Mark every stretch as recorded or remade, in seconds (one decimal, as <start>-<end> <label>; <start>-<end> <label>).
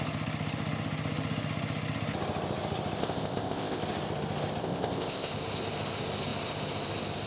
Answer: 0.0-3.0 recorded; 3.0-3.8 remade; 3.8-4.6 recorded; 4.6-5.3 remade; 5.3-7.3 recorded